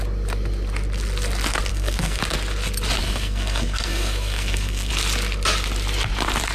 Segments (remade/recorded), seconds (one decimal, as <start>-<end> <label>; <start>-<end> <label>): 0.0-1.7 recorded; 1.7-2.2 remade; 2.2-3.0 recorded; 3.0-4.9 remade; 4.9-6.5 recorded